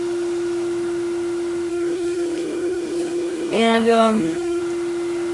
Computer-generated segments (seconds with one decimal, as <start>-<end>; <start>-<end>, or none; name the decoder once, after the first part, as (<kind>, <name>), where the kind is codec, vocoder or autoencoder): 1.7-4.6 (codec, SNAC)